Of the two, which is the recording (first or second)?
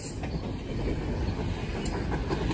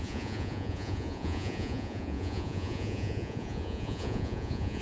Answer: first